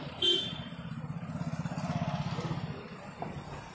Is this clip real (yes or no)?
yes